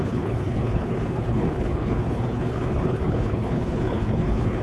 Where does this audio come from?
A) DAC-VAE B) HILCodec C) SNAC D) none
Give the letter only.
B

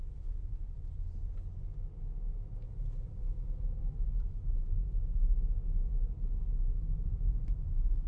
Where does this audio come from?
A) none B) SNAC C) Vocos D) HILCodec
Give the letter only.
A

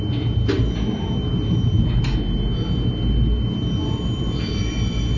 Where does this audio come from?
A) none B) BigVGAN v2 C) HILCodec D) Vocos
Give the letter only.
A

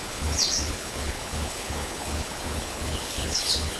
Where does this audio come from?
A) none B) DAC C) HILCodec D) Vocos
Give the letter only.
C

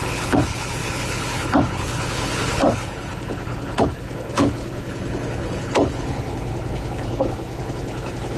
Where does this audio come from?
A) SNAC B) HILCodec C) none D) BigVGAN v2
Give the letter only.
B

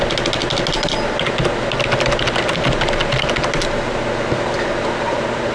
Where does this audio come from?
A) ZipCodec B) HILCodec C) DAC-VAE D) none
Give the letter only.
D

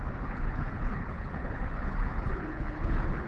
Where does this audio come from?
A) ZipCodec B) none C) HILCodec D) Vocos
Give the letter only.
C